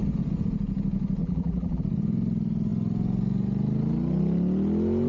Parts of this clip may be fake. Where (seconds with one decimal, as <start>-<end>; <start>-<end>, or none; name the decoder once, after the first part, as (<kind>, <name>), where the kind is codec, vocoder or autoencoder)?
1.2-1.8 (vocoder, BigVGAN v2)